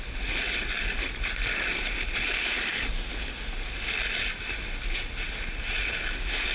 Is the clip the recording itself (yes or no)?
yes